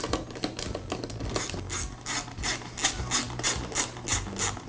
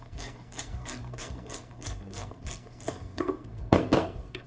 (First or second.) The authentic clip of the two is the first